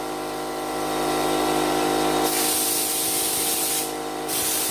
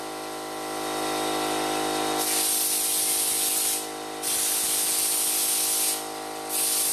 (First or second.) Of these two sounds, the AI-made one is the first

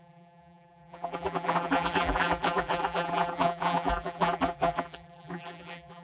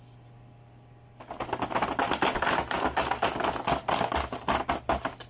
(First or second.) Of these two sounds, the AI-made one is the first